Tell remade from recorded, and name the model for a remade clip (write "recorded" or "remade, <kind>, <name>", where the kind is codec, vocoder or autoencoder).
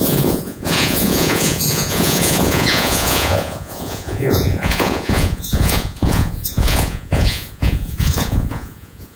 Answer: remade, vocoder, Vocos